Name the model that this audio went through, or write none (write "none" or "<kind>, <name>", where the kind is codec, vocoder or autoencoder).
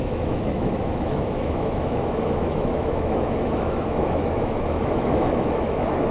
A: autoencoder, DAC-VAE